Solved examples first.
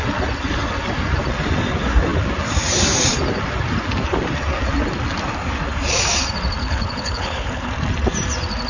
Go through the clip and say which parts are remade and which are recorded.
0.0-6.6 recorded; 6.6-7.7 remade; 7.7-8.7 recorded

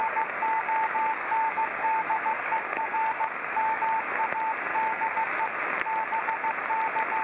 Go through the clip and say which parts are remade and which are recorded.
0.0-3.8 remade; 3.8-4.7 recorded; 4.7-5.4 remade; 5.4-7.2 recorded

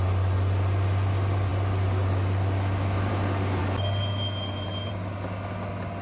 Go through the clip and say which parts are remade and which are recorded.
0.0-6.0 recorded

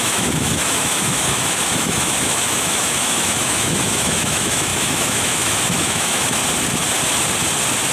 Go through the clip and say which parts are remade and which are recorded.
0.0-6.4 remade; 6.4-7.9 recorded

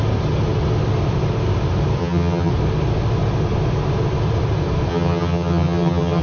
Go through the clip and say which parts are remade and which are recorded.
0.0-2.0 recorded; 2.0-2.5 remade; 2.5-4.9 recorded; 4.9-6.2 remade

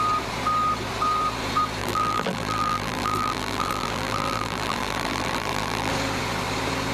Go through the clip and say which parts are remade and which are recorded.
0.0-1.8 recorded; 1.8-5.9 remade; 5.9-6.9 recorded

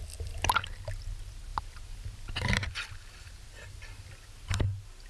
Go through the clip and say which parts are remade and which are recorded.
0.0-5.1 recorded